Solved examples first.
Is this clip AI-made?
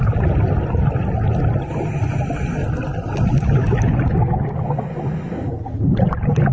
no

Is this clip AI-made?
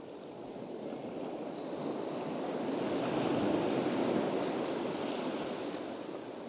no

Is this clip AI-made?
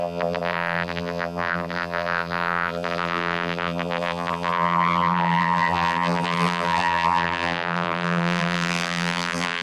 yes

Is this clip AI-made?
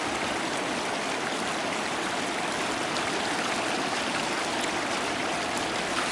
yes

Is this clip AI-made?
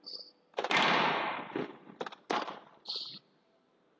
no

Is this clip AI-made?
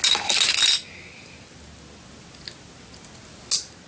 no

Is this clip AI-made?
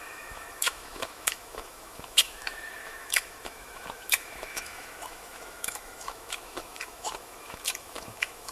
yes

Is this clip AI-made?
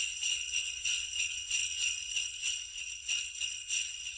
yes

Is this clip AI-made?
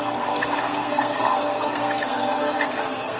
yes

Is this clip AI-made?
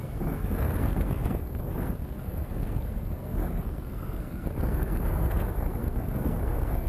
yes